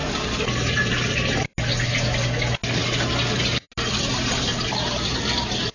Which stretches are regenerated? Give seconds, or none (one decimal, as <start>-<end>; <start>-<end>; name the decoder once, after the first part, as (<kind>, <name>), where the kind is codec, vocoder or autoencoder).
none